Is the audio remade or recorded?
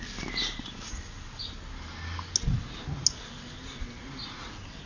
recorded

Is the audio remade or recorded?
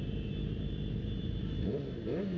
recorded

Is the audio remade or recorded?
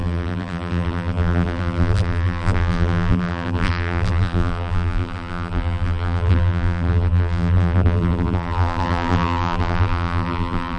remade